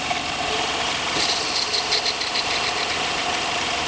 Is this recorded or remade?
recorded